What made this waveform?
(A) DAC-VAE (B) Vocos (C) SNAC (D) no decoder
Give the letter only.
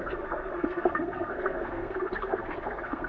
C